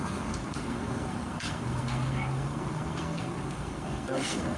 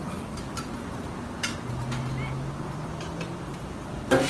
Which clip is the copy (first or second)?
first